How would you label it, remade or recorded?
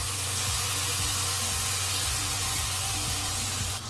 remade